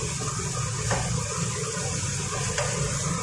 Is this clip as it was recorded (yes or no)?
yes